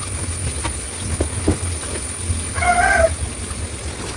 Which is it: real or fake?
real